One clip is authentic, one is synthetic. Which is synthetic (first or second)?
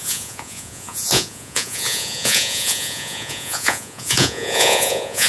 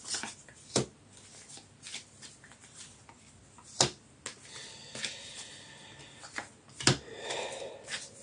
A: first